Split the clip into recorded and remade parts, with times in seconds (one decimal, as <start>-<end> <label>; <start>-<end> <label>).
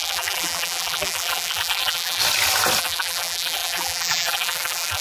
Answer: 0.0-2.2 remade; 2.2-2.8 recorded; 2.8-5.0 remade